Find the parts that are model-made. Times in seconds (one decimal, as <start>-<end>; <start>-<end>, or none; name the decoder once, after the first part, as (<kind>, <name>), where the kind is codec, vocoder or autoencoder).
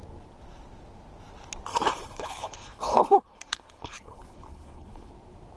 1.7-5.1 (codec, HILCodec)